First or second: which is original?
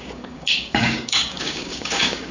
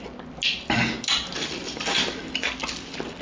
second